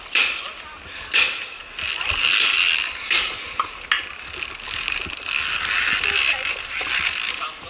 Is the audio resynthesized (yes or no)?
no